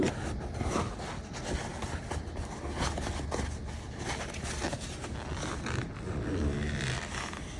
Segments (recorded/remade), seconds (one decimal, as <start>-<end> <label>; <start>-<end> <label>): 0.0-7.6 recorded